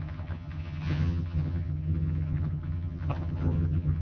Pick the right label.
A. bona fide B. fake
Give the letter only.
B